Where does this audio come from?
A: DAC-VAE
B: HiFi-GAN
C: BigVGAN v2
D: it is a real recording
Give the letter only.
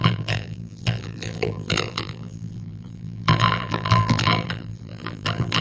C